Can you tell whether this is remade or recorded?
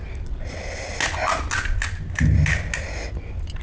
recorded